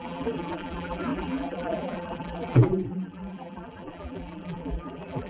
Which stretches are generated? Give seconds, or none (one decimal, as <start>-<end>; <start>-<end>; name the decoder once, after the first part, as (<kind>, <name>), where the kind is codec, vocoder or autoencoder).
0.0-5.3 (vocoder, BigVGAN v2)